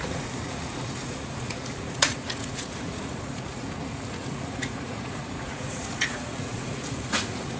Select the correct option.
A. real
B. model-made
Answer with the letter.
B